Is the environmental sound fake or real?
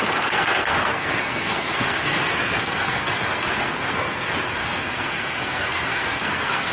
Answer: fake